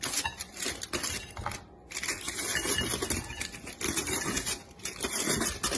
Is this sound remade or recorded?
recorded